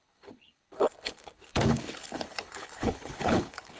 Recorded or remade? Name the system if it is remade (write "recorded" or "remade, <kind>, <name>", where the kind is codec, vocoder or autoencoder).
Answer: remade, codec, HILCodec